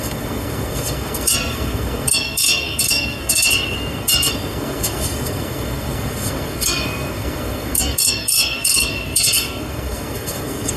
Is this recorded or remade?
remade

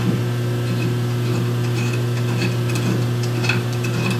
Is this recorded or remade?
recorded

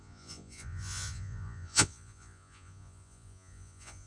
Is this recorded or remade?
remade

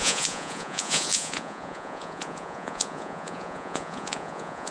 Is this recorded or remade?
remade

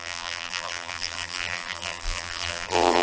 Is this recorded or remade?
remade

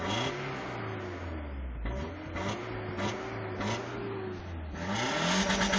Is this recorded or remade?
recorded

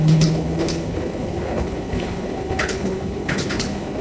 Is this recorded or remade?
remade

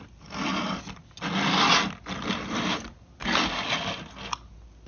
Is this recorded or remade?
recorded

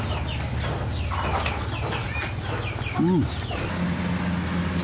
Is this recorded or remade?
recorded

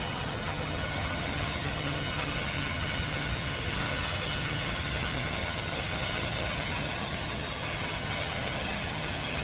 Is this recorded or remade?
remade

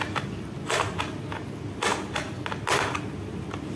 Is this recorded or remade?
recorded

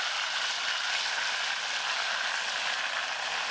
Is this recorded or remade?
recorded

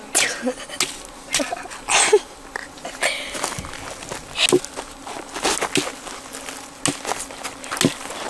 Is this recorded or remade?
recorded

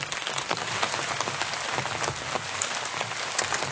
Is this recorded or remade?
recorded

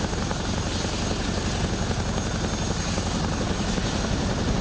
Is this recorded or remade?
recorded